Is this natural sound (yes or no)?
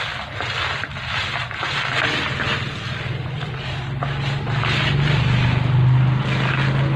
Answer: yes